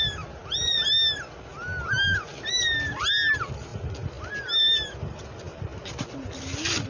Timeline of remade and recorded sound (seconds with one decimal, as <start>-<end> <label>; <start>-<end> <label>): 0.0-6.9 recorded